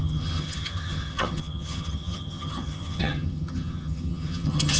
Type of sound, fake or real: fake